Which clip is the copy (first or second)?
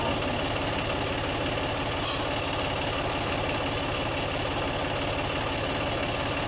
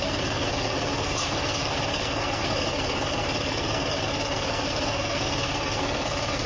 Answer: second